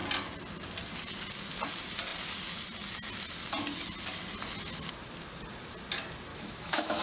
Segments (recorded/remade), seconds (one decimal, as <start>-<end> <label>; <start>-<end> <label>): 0.0-6.3 recorded; 6.3-7.0 remade